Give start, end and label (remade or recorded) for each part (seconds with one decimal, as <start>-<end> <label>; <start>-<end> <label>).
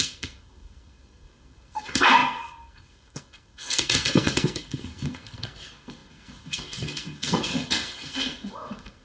0.0-9.0 remade